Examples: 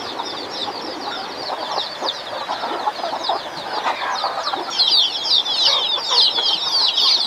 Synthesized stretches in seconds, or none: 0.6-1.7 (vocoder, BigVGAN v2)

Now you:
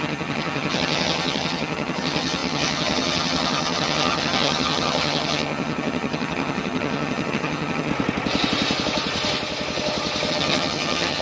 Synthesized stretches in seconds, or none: 0.0-7.9 (vocoder, HiFi-GAN); 10.3-11.2

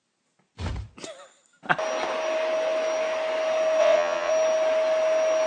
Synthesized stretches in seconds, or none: 3.8-4.3 (vocoder, WaveNeXt)

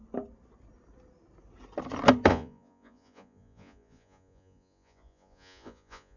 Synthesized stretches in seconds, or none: 2.3-6.2 (vocoder, Vocos)

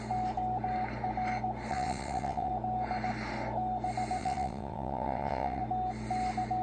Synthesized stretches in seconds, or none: 1.7-2.5 (vocoder, WaveNeXt); 4.2-5.6

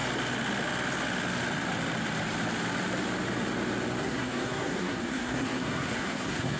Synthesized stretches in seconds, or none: 4.0-6.6 (codec, SNAC)

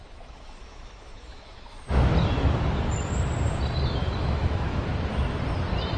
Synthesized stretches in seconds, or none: 0.0-2.0 (autoencoder, DAC-VAE); 4.0-4.9